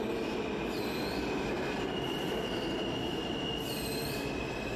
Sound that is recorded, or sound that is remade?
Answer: remade